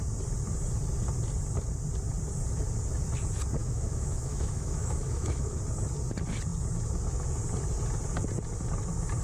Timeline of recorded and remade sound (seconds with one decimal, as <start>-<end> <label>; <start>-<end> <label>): 0.0-3.6 recorded; 3.6-5.6 remade; 5.6-9.2 recorded